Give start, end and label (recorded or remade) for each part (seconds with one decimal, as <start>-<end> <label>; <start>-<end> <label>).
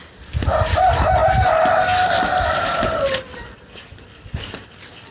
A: 0.0-5.1 recorded